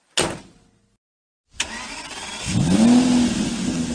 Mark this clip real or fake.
real